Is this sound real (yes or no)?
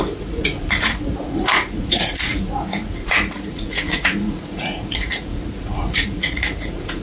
no